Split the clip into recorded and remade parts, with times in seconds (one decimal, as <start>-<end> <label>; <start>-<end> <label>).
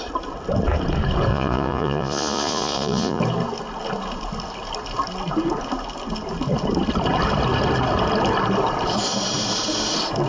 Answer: 0.0-1.3 recorded; 1.3-3.2 remade; 3.2-10.3 recorded